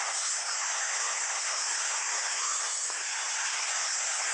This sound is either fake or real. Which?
fake